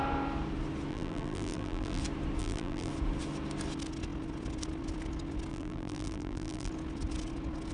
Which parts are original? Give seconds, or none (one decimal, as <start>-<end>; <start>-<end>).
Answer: 0.0-0.9; 2.0-2.4; 2.9-5.5; 6.7-7.7